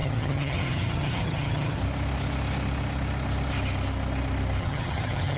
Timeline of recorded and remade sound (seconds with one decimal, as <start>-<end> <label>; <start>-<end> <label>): 0.0-1.8 remade; 1.8-4.6 recorded; 4.6-5.4 remade